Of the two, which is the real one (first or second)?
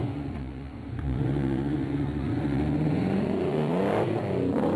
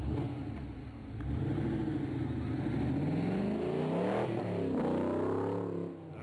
second